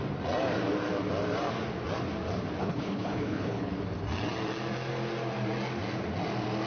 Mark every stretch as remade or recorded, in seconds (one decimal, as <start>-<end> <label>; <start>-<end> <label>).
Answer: 0.0-2.6 recorded; 2.6-3.7 remade; 3.7-6.7 recorded